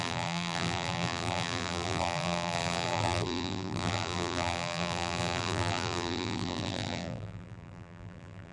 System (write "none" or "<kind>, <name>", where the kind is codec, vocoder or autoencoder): vocoder, BigVGAN v2